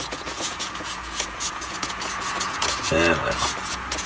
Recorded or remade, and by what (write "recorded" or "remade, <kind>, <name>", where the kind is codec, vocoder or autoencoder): remade, vocoder, Vocos